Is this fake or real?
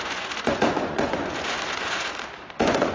fake